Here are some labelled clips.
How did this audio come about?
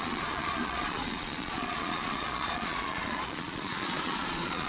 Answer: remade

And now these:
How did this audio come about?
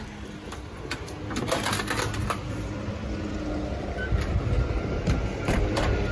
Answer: recorded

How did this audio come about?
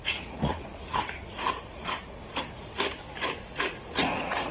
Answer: remade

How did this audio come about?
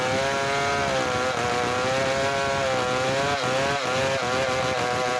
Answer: recorded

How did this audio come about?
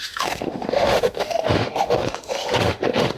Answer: remade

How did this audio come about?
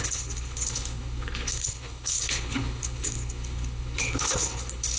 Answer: remade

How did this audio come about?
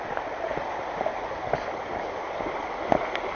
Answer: recorded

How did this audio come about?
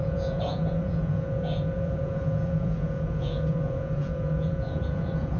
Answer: remade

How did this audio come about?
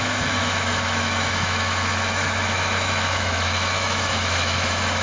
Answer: remade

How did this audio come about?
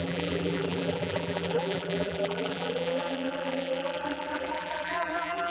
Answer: remade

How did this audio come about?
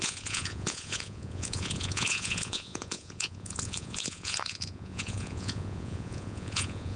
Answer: remade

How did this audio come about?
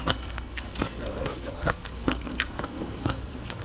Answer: remade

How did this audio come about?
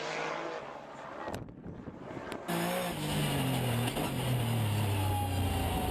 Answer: recorded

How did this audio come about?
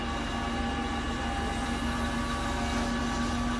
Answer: recorded